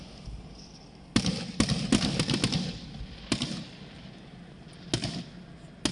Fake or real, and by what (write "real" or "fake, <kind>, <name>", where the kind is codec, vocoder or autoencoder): real